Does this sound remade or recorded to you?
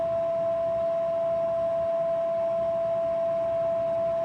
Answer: recorded